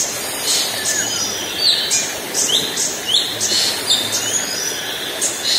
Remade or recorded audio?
recorded